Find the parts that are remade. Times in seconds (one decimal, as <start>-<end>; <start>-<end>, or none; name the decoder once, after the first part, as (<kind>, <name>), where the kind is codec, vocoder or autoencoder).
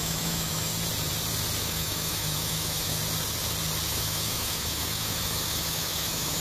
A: 0.0-0.7 (autoencoder, DAC-VAE); 1.6-3.0; 3.9-6.4